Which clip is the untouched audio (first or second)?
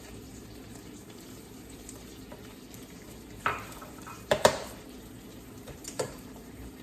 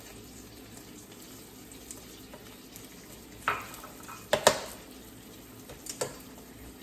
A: second